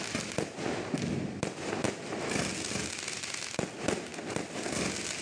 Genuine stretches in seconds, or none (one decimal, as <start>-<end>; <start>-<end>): 0.0-5.2